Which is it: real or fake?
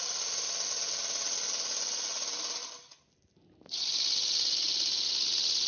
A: real